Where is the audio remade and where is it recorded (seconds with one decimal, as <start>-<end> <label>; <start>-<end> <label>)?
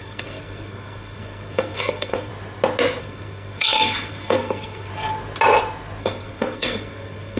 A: 0.0-2.3 remade; 2.3-3.0 recorded; 3.0-4.9 remade; 4.9-6.0 recorded; 6.0-7.4 remade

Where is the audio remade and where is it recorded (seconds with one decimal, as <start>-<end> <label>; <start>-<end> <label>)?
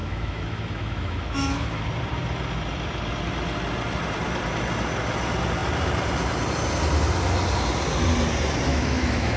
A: 0.0-1.8 remade; 1.8-8.7 recorded; 8.7-9.4 remade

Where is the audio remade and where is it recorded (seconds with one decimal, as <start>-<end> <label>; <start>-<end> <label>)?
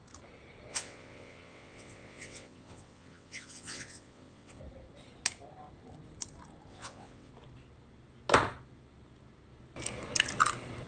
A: 0.0-0.7 recorded; 0.7-4.6 remade; 4.6-6.7 recorded; 6.7-7.3 remade; 7.3-10.9 recorded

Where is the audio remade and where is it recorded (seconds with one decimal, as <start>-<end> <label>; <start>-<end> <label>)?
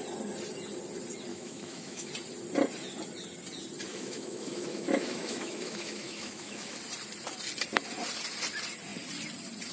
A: 0.0-1.3 recorded; 1.3-2.1 remade; 2.1-3.9 recorded; 3.9-6.8 remade; 6.8-9.7 recorded